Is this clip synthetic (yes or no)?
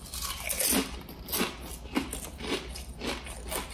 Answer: no